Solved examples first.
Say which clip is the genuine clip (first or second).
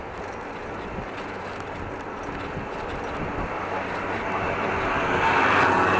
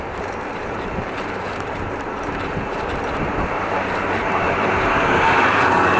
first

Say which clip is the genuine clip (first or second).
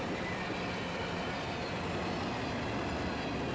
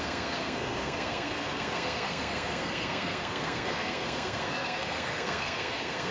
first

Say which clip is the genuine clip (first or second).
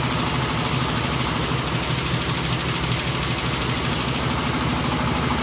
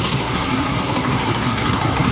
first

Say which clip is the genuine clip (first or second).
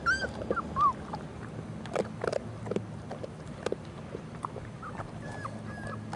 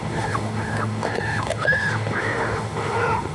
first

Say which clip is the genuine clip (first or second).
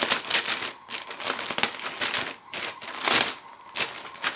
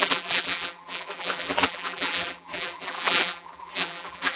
first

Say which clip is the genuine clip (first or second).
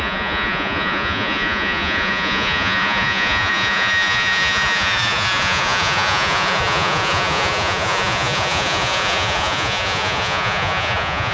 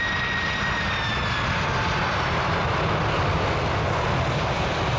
second